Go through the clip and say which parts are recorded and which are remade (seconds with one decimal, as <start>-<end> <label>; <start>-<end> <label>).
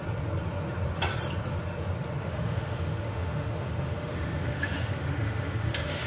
0.0-2.2 recorded; 2.2-6.1 remade